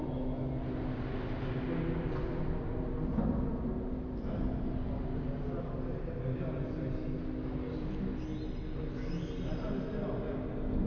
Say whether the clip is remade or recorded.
recorded